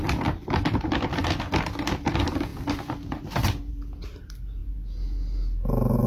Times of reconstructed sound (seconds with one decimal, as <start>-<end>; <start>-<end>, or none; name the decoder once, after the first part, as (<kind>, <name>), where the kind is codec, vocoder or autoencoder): none

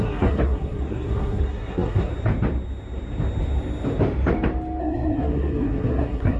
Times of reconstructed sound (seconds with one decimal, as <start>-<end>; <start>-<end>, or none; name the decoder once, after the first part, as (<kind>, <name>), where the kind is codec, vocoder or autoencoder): 0.0-2.1 (codec, SNAC); 4.8-6.4

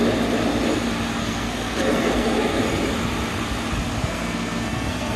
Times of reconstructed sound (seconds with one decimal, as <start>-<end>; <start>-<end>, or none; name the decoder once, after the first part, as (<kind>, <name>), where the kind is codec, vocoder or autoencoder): 1.2-2.6 (codec, SNAC); 4.0-5.2

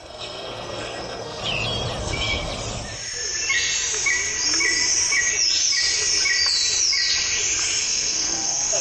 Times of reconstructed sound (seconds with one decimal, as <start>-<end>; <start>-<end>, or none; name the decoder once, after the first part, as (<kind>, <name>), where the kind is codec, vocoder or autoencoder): 0.0-1.4 (codec, SNAC); 2.0-2.5; 7.8-8.8